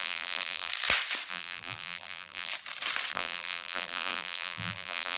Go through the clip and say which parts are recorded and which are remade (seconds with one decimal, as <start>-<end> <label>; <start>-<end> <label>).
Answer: 0.0-0.7 remade; 0.7-1.3 recorded; 1.3-2.5 remade; 2.5-3.1 recorded; 3.1-5.2 remade